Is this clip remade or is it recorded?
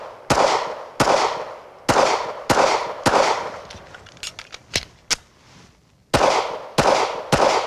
recorded